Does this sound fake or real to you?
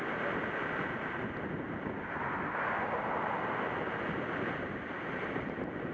real